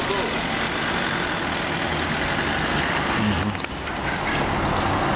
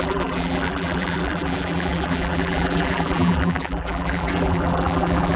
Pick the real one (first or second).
first